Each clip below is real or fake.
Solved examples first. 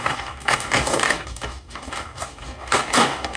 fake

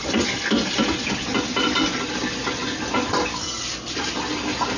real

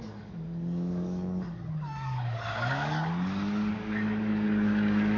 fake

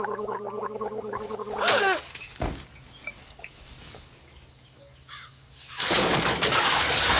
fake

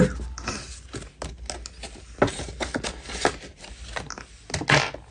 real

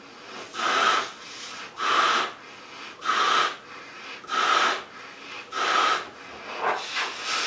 real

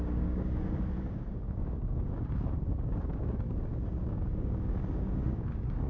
fake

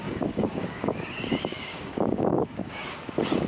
fake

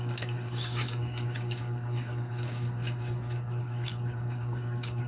fake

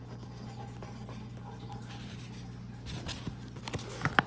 real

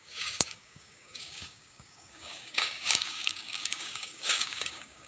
fake